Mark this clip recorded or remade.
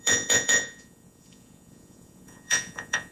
remade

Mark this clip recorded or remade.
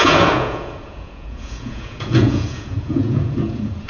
remade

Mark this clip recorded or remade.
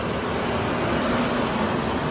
recorded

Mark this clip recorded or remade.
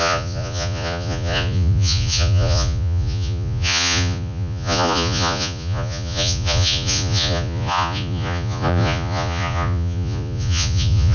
remade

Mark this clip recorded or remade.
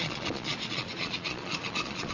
remade